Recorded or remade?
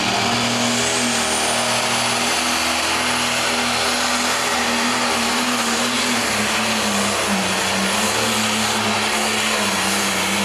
recorded